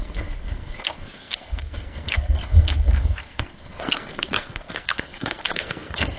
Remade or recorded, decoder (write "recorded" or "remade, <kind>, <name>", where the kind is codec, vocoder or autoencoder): remade, codec, SNAC